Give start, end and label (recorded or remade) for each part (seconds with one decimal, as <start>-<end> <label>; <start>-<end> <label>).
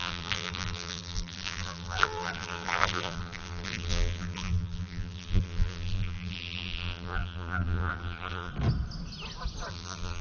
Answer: 0.0-8.5 remade; 8.5-9.7 recorded; 9.7-10.2 remade